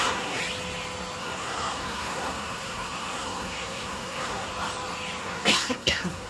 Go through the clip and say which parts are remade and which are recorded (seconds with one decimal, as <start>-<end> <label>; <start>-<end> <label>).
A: 0.0-0.4 remade; 0.4-1.2 recorded; 1.2-4.5 remade; 4.5-5.2 recorded; 5.2-6.3 remade